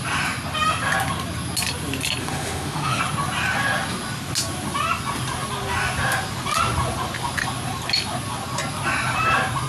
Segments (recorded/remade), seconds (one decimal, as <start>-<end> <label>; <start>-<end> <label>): 0.0-2.2 recorded; 2.2-3.0 remade; 3.0-9.7 recorded